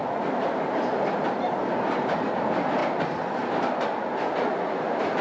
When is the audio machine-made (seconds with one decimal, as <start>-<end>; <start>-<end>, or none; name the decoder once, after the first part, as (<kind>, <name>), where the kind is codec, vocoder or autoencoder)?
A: none